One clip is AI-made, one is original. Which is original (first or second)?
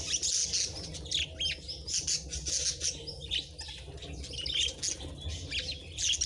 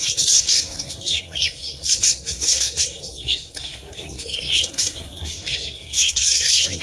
first